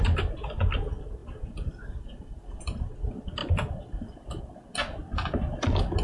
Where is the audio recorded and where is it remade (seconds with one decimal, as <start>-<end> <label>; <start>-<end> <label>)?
0.0-1.2 recorded; 1.2-1.7 remade; 1.7-3.4 recorded; 3.4-4.4 remade; 4.4-6.0 recorded